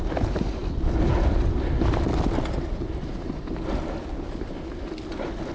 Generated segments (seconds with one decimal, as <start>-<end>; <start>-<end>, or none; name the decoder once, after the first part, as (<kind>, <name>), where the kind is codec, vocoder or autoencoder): none